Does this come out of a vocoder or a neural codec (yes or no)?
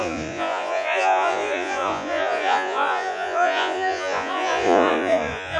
yes